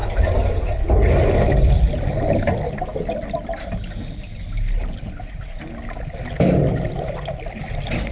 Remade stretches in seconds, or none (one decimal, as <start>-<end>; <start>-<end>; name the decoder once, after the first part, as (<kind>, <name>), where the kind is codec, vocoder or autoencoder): none